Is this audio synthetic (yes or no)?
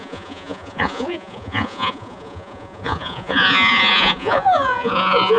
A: yes